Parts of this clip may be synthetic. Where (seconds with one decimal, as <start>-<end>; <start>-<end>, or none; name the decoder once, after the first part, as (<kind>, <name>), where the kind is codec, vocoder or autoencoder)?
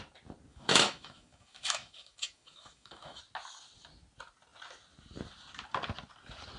0.5-3.2 (autoencoder, DAC-VAE)